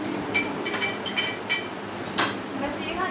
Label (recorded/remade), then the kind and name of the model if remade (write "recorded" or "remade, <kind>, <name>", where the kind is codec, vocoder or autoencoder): recorded